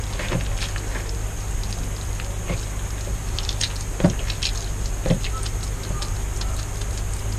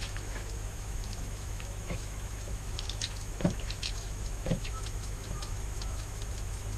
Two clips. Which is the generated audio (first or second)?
second